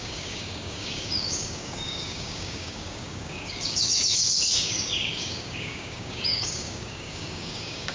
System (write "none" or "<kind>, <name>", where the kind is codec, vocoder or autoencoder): codec, DAC